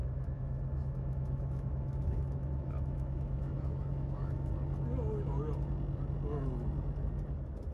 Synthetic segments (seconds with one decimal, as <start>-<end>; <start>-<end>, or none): 0.0-4.5